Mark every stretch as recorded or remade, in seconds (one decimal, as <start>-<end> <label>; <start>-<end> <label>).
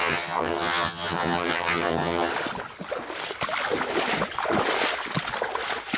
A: 0.0-2.3 remade; 2.3-6.0 recorded